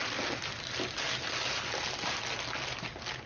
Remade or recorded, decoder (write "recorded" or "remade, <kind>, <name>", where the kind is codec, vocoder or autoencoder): recorded